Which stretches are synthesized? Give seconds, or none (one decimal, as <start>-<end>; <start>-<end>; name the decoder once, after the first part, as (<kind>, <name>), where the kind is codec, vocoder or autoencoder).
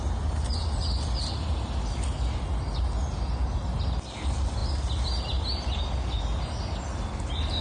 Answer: none